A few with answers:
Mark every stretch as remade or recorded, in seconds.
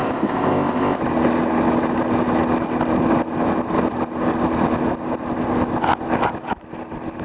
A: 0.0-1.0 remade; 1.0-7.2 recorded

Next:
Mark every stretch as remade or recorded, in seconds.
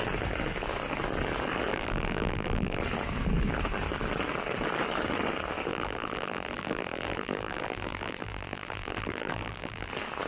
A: 0.0-1.7 recorded; 1.7-2.8 remade; 2.8-5.7 recorded; 5.7-9.9 remade; 9.9-10.3 recorded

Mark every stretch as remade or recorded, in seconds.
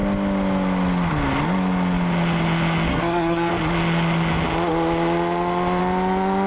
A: 0.0-2.9 recorded; 2.9-3.5 remade; 3.5-6.5 recorded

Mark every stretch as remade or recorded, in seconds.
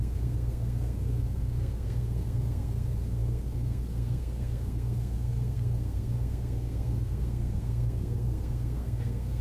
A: 0.0-9.4 remade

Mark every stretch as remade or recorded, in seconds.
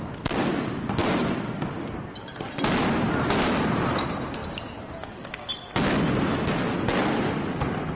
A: 0.0-8.0 recorded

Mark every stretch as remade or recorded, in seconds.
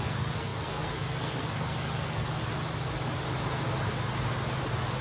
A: 0.0-2.4 remade; 2.4-5.0 recorded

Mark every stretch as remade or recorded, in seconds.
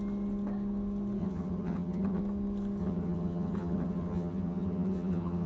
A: 0.0-1.2 recorded; 1.2-2.2 remade; 2.2-2.8 recorded; 2.8-5.5 remade